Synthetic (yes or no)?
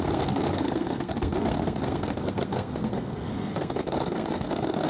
yes